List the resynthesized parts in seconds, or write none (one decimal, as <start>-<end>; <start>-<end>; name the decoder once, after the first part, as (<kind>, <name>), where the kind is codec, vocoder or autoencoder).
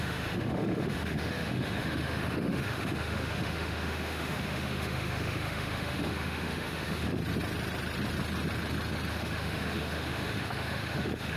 0.0-7.2 (autoencoder, DAC-VAE); 9.1-11.4